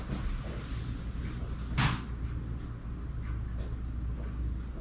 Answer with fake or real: real